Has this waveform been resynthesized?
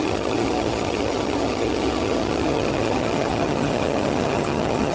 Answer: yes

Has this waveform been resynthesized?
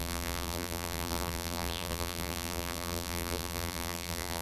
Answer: yes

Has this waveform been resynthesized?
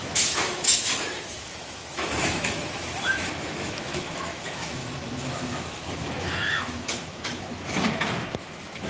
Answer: yes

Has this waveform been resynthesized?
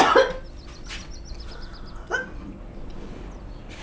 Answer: no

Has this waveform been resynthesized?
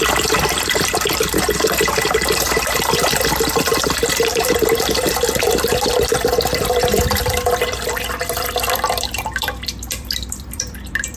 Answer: yes